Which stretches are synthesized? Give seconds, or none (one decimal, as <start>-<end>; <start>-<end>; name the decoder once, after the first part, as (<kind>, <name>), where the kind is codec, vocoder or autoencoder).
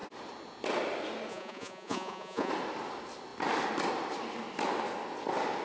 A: 1.3-2.5 (vocoder, Vocos)